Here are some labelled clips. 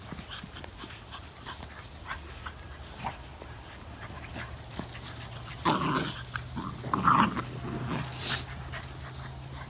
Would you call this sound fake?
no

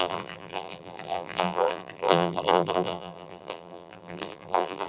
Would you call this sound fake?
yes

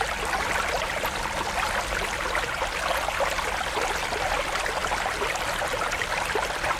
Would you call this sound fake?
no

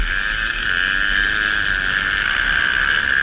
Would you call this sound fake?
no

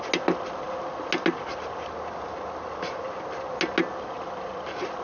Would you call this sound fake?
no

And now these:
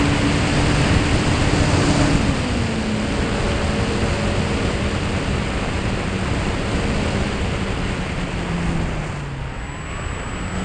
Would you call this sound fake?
no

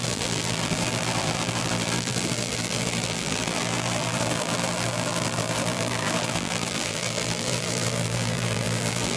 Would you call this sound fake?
yes